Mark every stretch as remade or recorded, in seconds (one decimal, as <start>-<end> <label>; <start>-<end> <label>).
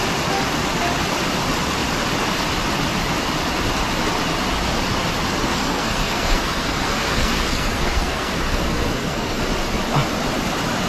0.0-5.4 recorded; 5.4-9.4 remade; 9.4-10.9 recorded